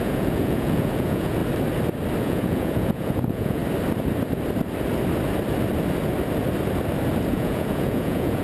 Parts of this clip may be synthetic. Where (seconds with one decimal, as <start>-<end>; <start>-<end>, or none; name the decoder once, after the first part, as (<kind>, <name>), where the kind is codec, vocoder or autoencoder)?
0.0-1.4 (vocoder, Vocos); 2.2-3.6; 7.3-8.4